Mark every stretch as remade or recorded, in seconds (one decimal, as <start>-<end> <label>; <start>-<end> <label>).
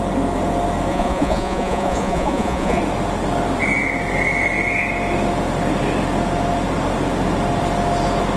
0.0-0.9 recorded; 0.9-2.8 remade; 2.8-8.4 recorded